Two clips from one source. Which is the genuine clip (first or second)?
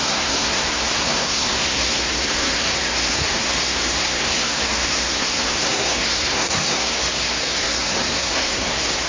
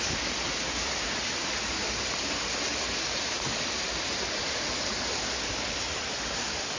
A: second